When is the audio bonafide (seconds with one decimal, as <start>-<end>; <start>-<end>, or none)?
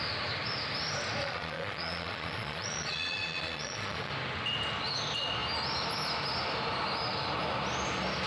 0.0-1.2; 4.1-8.3